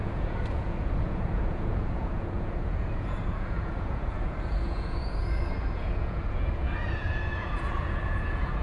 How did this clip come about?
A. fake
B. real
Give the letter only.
A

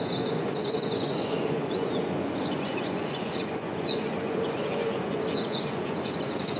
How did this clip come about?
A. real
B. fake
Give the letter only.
B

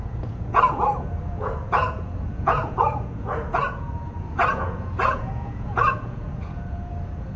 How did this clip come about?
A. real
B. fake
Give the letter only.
B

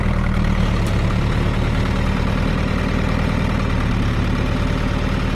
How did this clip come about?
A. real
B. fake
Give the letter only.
A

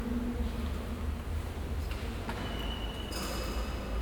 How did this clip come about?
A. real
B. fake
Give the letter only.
A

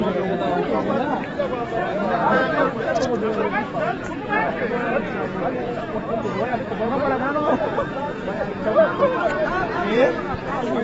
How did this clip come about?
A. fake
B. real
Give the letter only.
A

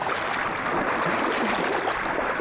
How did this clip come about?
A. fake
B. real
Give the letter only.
B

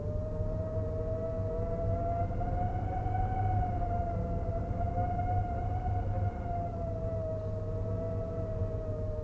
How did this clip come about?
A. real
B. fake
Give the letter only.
A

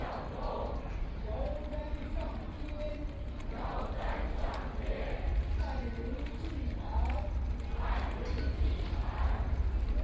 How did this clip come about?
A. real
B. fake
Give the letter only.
A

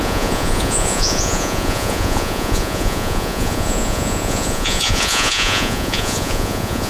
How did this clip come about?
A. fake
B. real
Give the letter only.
A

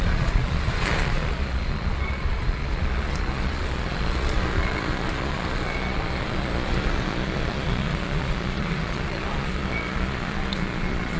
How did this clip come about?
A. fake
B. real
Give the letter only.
A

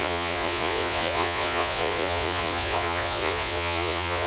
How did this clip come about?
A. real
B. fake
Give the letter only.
B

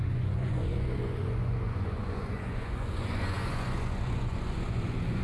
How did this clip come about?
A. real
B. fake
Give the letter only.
B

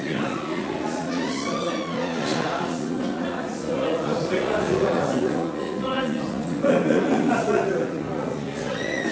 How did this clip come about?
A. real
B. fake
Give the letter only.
B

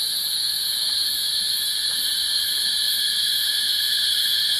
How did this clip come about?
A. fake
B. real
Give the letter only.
A